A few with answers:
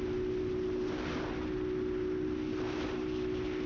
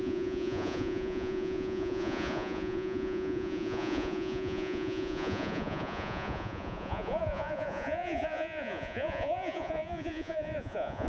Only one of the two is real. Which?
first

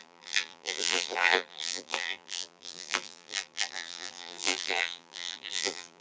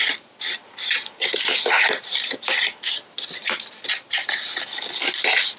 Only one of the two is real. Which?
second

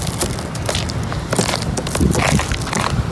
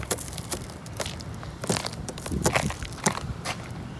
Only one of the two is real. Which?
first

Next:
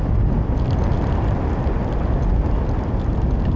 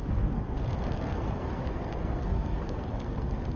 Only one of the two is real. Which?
first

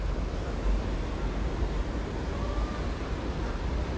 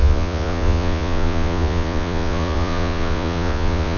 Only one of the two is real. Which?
first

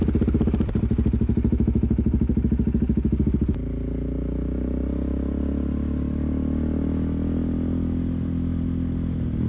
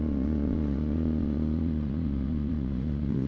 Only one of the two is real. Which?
first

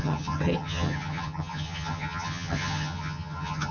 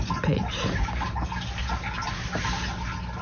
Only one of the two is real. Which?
second